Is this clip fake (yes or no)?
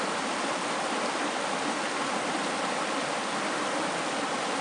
no